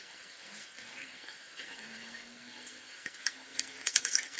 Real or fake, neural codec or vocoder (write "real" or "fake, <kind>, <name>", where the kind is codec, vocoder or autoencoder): fake, codec, SNAC